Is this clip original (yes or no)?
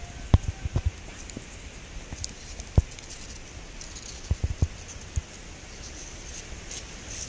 yes